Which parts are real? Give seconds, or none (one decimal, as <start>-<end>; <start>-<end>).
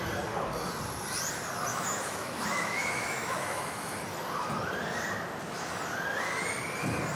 0.0-1.7; 3.9-7.2